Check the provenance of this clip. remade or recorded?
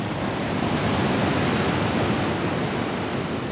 recorded